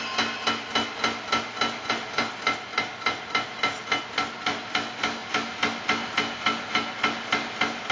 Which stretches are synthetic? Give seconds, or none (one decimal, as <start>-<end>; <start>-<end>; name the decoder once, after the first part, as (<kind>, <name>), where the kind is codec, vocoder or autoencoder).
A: none